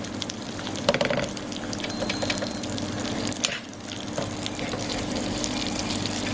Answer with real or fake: real